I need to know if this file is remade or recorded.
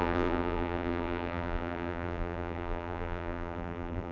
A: remade